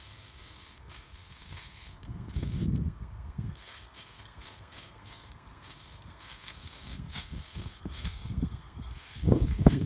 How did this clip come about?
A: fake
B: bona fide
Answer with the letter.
A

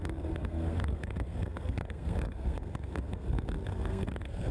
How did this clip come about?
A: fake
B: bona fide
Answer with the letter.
A